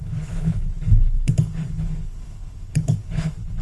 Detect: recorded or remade remade